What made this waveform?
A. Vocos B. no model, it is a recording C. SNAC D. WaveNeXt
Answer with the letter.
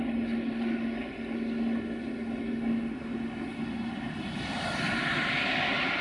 B